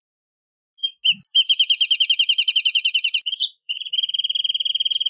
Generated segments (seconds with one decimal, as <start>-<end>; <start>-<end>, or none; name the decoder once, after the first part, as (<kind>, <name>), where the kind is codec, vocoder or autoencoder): 0.0-0.4 (vocoder, BigVGAN v2); 2.5-3.9